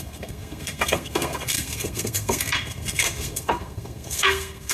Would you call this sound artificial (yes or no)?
yes